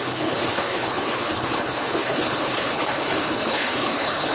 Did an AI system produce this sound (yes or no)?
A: yes